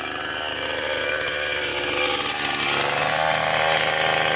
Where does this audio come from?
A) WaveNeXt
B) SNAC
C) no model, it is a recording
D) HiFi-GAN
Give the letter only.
C